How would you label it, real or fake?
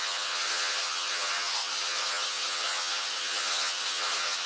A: fake